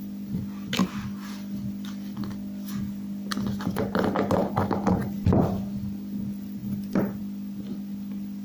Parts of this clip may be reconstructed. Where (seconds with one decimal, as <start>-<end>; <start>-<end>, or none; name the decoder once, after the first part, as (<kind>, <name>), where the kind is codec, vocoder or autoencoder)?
5.0-5.6 (vocoder, BigVGAN v2); 6.6-7.2